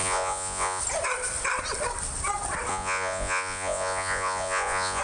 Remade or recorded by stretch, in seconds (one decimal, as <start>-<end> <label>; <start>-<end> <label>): 0.0-0.8 remade; 0.8-2.7 recorded; 2.7-5.0 remade

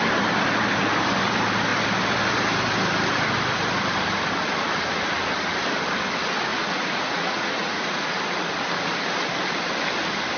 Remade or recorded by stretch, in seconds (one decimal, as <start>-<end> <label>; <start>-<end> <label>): 0.0-6.5 recorded; 6.5-8.1 remade; 8.1-10.4 recorded

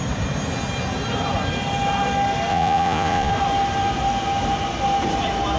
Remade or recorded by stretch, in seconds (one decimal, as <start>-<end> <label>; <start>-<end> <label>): 0.0-2.5 recorded; 2.5-3.3 remade; 3.3-5.6 recorded

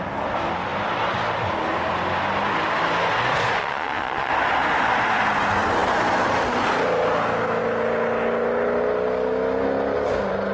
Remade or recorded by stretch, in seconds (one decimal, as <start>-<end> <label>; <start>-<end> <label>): 0.0-3.6 recorded; 3.6-4.3 remade; 4.3-10.5 recorded

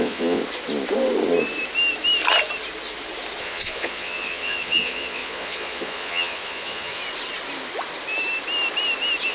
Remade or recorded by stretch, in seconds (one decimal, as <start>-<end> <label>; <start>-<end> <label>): 0.0-0.4 remade; 0.4-3.4 recorded; 3.4-7.0 remade; 7.0-9.3 recorded

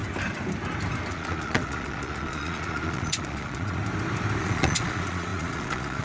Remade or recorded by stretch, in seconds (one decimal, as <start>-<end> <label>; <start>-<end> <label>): 0.0-1.1 recorded; 1.1-3.8 remade; 3.8-4.4 recorded; 4.4-6.0 remade

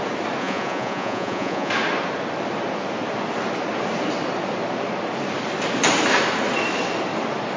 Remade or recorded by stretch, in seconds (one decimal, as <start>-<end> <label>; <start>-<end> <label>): 0.0-0.4 recorded; 0.4-1.7 remade; 1.7-7.6 recorded

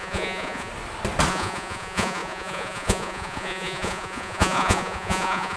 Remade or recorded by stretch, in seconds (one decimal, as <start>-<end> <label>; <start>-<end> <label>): 0.0-0.7 remade; 0.7-1.3 recorded; 1.3-5.6 remade